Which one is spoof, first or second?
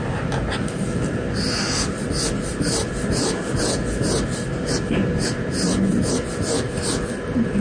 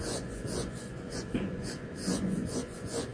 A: second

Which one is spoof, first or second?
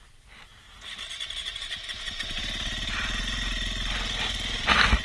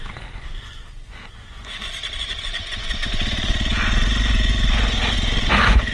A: second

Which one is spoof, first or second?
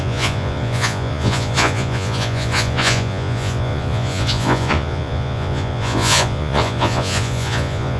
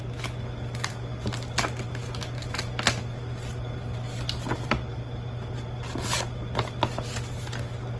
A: first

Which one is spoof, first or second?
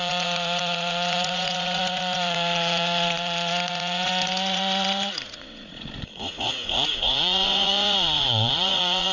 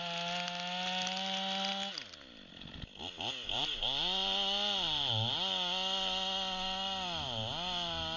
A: first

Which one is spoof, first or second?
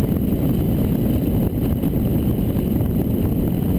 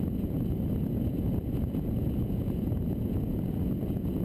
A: second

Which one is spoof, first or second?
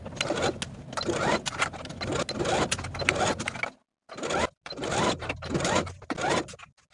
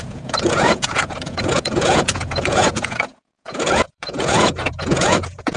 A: second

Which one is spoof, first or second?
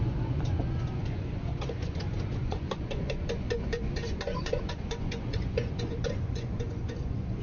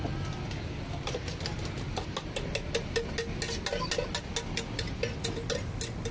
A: first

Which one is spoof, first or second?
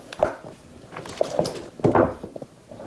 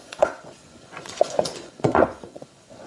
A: second